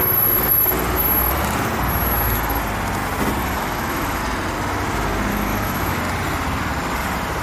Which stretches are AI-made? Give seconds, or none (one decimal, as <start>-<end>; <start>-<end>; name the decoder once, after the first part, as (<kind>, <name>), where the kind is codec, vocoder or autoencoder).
3.4-4.2 (autoencoder, DAC-VAE); 5.3-6.0